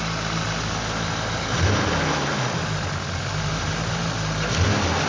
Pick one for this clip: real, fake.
real